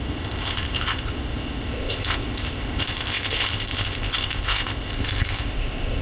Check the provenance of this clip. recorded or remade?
remade